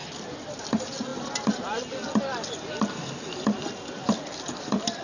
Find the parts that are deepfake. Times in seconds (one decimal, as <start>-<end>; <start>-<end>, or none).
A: none